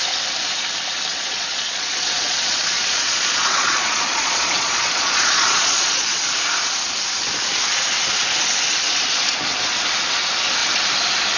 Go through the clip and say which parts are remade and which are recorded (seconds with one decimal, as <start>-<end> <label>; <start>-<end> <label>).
0.0-1.1 recorded; 1.1-6.2 remade; 6.2-11.4 recorded